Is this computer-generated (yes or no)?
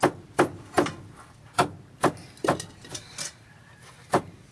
no